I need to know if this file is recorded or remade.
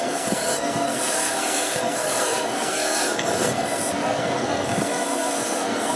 remade